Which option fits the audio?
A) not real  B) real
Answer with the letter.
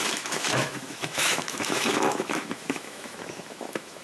A